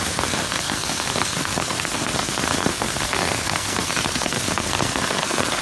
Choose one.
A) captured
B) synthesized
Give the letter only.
B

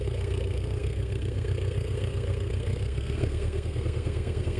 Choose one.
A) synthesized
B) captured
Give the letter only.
A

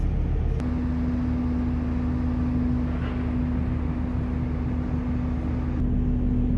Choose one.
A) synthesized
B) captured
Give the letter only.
B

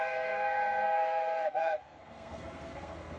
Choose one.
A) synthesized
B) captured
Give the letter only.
A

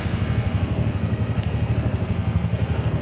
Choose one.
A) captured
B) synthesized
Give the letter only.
B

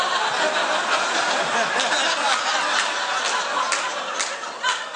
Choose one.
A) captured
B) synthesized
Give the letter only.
A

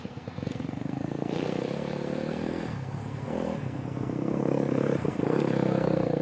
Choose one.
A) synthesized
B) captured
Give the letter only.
A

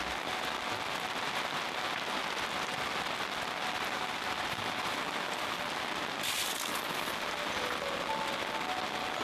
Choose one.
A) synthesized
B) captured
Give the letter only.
B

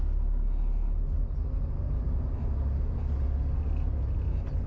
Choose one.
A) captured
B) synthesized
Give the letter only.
A